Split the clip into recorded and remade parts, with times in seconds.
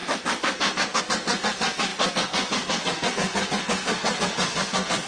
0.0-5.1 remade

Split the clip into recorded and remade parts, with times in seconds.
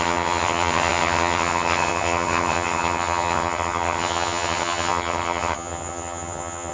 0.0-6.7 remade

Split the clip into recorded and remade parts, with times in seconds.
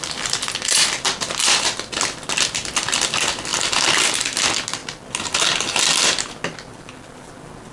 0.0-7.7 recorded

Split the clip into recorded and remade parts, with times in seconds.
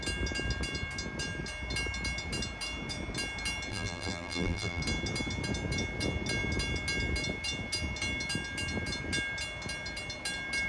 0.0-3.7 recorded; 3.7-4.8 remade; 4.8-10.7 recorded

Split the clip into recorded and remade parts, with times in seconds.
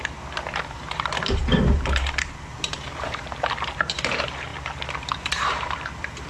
0.0-4.5 remade; 4.5-5.1 recorded; 5.1-6.3 remade